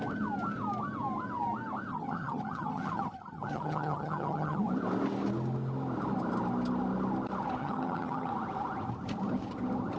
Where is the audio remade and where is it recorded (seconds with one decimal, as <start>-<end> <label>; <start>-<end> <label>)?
0.0-1.9 recorded; 1.9-4.6 remade; 4.6-7.6 recorded; 7.6-8.3 remade; 8.3-10.0 recorded